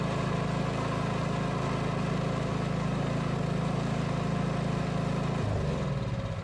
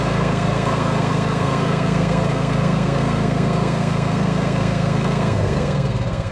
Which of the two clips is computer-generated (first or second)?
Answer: second